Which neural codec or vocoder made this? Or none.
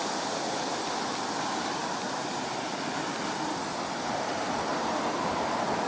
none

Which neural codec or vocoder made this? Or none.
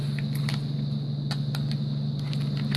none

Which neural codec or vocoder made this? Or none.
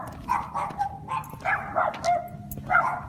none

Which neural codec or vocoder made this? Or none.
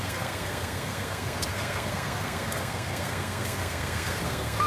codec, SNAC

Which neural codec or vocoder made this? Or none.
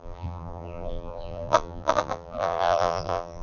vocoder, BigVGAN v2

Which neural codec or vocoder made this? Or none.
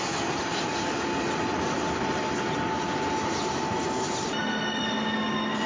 none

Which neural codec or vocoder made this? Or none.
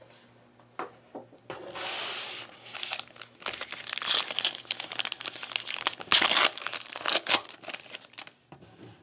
none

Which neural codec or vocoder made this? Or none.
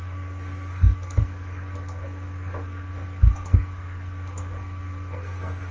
codec, SNAC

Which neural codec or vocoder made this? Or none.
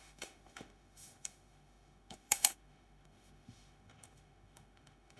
autoencoder, DAC-VAE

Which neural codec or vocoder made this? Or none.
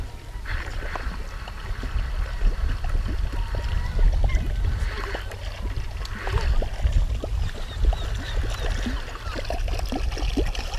none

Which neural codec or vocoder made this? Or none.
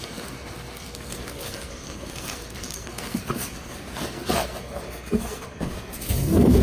codec, SNAC